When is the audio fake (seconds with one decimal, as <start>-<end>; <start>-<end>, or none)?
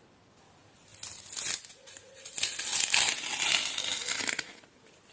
none